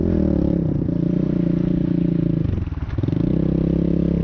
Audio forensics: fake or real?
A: real